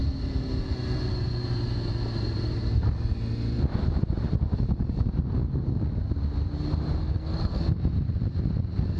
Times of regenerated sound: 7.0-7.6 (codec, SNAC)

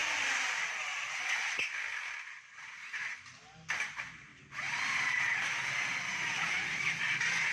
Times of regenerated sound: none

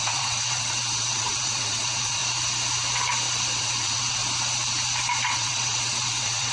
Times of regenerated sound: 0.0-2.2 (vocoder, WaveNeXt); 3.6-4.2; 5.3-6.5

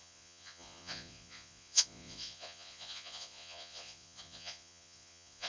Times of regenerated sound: 0.0-5.5 (vocoder, Vocos)

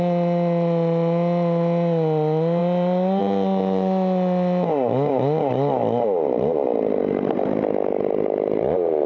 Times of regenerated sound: 2.6-3.2 (vocoder, BigVGAN v2); 5.8-7.0